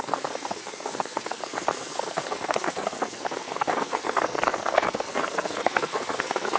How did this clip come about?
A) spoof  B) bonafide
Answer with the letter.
A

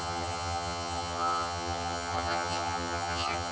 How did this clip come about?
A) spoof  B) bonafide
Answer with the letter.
A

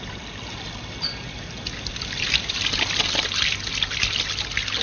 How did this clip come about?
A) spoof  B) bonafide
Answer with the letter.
B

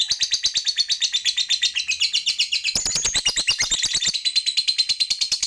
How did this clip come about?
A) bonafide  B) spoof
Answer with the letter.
A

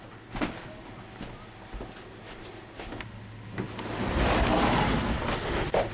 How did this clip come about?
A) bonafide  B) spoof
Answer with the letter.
A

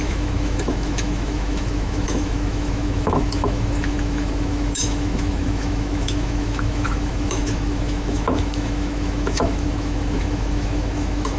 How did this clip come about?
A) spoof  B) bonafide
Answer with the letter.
A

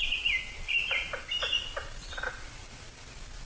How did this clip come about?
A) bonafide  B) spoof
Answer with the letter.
A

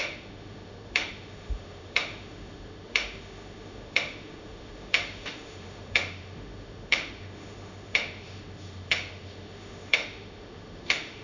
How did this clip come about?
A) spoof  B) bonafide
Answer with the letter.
A